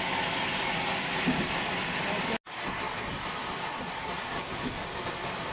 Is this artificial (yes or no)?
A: no